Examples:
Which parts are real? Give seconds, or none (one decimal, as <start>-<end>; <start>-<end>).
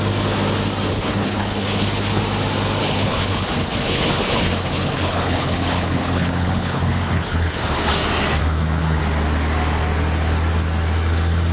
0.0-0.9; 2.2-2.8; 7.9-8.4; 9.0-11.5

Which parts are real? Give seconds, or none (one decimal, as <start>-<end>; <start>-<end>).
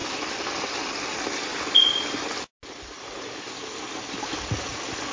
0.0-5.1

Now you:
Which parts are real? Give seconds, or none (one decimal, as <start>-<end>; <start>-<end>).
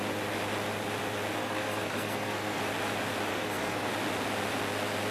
0.0-1.4; 2.6-3.3; 3.9-5.1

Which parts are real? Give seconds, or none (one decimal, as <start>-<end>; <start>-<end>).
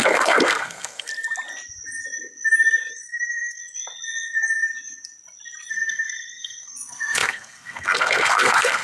1.1-2.9; 3.6-5.7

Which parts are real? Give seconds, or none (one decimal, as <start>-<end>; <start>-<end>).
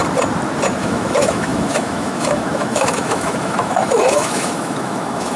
0.0-0.8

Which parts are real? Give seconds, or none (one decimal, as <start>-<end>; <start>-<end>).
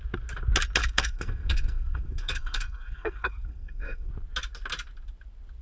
0.0-0.8; 4.1-5.6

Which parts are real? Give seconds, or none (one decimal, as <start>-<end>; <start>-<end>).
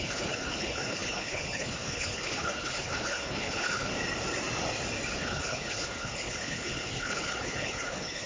3.9-5.2